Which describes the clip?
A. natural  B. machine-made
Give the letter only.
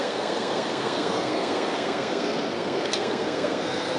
B